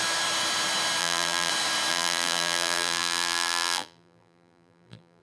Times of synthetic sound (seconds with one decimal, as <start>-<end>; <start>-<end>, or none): 1.0-1.5; 1.9-5.2